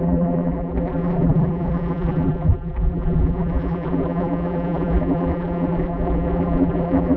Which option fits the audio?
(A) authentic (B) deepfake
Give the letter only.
B